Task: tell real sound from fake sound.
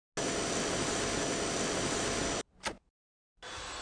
real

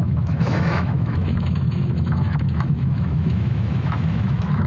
fake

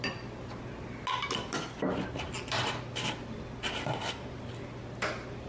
real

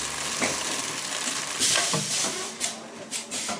real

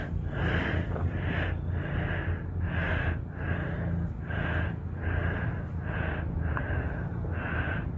real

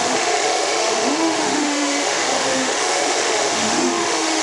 fake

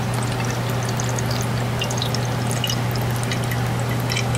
real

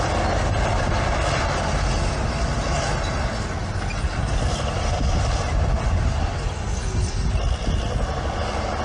real